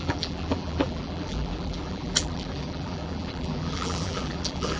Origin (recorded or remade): remade